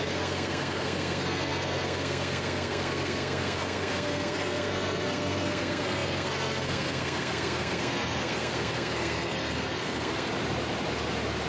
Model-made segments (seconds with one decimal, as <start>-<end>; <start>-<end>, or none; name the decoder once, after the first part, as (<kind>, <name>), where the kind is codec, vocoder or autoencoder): 0.0-10.3 (codec, SNAC)